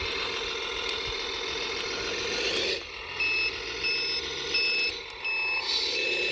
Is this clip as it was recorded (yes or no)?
yes